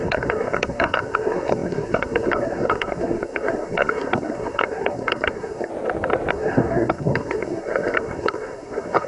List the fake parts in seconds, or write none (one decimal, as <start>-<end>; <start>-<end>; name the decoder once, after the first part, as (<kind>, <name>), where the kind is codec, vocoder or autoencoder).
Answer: 0.0-5.7 (codec, SNAC); 6.3-9.1